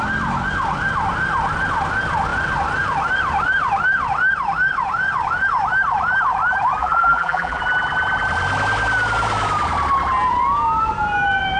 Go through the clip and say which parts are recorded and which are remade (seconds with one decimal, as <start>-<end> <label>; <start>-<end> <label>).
0.0-6.8 recorded; 6.8-7.6 remade; 7.6-11.6 recorded